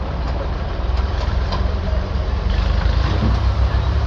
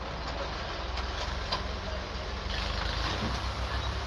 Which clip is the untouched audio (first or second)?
second